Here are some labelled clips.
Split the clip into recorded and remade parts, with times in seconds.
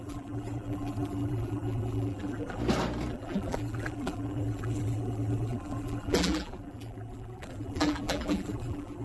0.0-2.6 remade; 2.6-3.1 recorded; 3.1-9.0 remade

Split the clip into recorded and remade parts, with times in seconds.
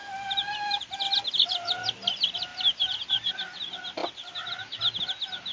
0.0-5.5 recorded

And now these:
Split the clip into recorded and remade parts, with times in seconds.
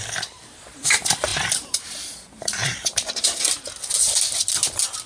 0.0-1.3 recorded; 1.3-3.6 remade; 3.6-5.1 recorded